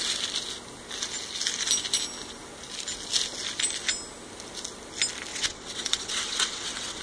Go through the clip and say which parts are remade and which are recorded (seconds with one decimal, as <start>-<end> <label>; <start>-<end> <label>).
0.0-5.3 recorded; 5.3-7.0 remade